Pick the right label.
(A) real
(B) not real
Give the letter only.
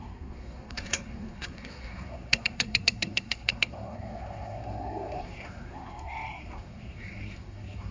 B